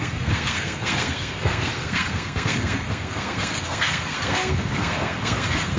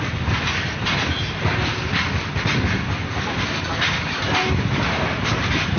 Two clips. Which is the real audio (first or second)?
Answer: second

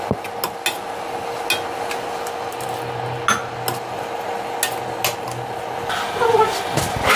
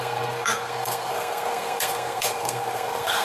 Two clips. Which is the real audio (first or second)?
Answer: first